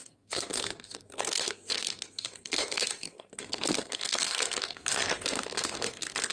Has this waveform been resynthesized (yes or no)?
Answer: yes